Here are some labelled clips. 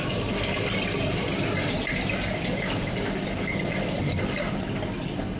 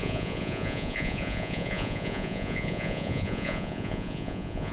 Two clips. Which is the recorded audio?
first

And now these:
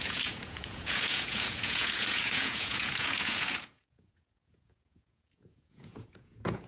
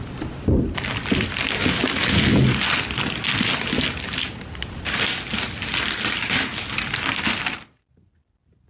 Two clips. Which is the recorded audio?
second